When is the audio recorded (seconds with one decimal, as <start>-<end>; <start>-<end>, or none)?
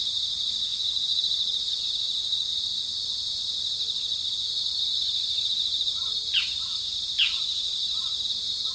0.0-8.7